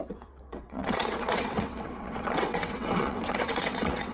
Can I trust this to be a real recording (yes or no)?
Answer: no